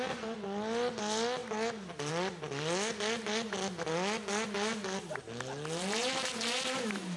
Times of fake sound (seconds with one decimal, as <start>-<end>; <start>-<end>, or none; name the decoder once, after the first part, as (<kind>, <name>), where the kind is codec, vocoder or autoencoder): none